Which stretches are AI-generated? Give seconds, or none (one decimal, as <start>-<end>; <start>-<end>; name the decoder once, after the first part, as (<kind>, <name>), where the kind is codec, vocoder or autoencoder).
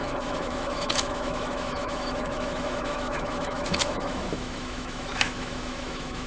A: 0.0-6.3 (autoencoder, DAC-VAE)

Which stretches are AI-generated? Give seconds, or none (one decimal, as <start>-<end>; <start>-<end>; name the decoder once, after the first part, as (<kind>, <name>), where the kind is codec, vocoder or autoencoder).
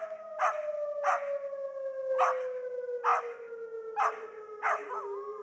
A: none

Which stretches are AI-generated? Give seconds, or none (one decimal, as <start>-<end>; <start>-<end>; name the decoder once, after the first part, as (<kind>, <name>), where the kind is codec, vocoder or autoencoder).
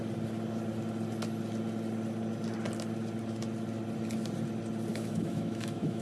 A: 4.9-6.0 (autoencoder, DAC-VAE)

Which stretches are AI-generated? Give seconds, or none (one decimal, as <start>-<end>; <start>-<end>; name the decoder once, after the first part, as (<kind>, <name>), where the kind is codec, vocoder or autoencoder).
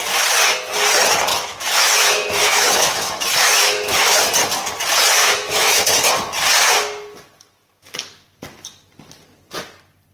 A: 1.3-4.2 (autoencoder, DAC-VAE); 5.2-6.1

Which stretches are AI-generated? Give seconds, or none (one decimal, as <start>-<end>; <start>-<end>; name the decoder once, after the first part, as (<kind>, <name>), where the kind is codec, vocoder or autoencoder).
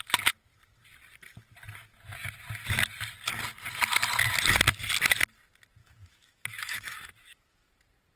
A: 5.8-7.7 (autoencoder, DAC-VAE)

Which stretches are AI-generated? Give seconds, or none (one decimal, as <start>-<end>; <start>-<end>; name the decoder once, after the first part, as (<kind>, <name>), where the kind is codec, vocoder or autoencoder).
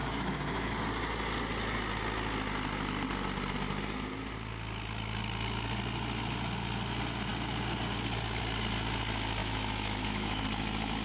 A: 0.0-0.7 (autoencoder, DAC-VAE); 9.4-10.4